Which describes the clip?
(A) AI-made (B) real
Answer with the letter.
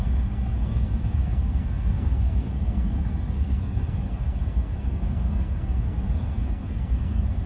A